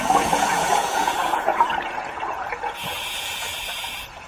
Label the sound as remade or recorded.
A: remade